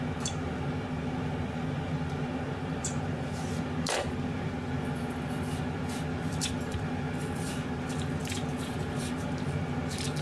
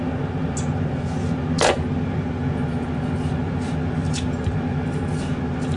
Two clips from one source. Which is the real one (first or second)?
second